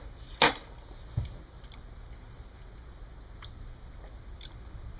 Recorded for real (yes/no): yes